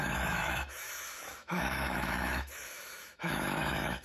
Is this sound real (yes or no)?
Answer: no